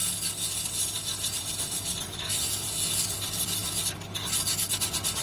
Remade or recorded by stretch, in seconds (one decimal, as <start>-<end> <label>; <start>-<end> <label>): 0.0-0.9 recorded; 0.9-3.6 remade; 3.6-5.2 recorded